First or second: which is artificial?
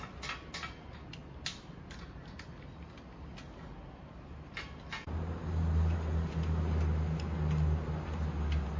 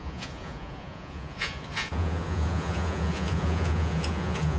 second